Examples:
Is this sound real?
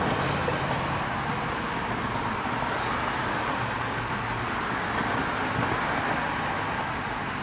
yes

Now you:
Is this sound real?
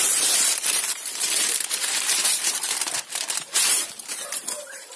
no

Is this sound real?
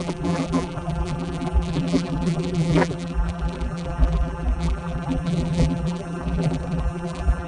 no